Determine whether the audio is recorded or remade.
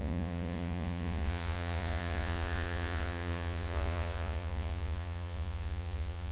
remade